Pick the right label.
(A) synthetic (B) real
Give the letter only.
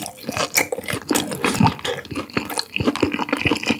B